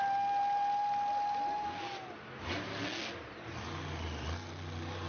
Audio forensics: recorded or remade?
recorded